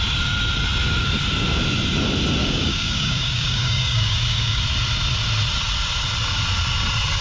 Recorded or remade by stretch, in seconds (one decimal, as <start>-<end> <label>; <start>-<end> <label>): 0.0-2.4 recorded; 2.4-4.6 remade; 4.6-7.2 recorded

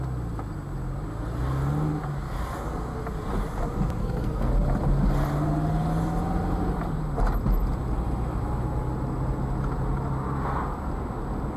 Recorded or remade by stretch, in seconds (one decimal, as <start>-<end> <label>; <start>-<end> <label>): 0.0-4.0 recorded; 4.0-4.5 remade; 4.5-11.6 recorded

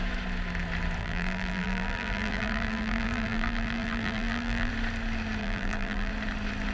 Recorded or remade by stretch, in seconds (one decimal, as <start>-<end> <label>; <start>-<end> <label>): 0.0-1.0 recorded; 1.0-4.7 remade; 4.7-5.4 recorded; 5.4-6.1 remade; 6.1-6.7 recorded

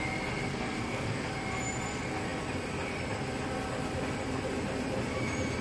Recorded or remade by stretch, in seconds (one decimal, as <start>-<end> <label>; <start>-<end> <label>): 0.0-0.5 recorded; 0.5-1.3 remade; 1.3-5.6 recorded